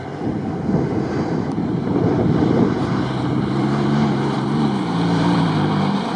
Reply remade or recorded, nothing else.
remade